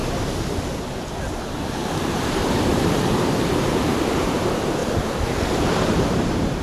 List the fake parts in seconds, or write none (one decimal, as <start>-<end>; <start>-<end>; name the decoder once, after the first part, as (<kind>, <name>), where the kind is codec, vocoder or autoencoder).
0.0-1.8 (vocoder, BigVGAN v2); 2.7-6.6